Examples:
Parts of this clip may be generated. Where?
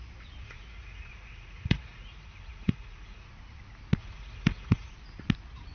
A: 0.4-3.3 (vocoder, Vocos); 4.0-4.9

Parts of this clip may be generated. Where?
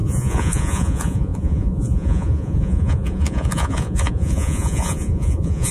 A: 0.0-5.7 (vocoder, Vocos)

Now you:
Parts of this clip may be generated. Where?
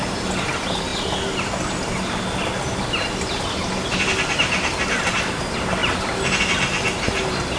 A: none